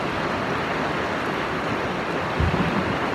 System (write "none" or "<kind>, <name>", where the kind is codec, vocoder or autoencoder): none